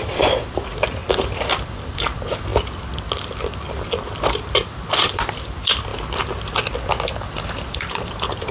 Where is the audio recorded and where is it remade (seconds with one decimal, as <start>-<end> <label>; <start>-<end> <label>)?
0.0-2.5 remade; 2.5-4.2 recorded; 4.2-5.9 remade; 5.9-7.3 recorded; 7.3-8.5 remade